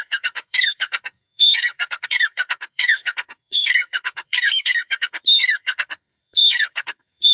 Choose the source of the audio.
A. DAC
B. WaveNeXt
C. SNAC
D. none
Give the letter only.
C